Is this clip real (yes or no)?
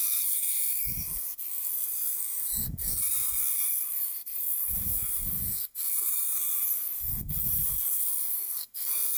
no